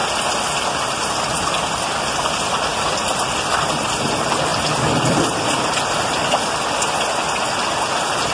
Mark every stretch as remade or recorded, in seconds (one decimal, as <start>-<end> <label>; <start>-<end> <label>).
0.0-2.7 recorded; 2.7-3.4 remade; 3.4-4.5 recorded; 4.5-7.0 remade; 7.0-8.3 recorded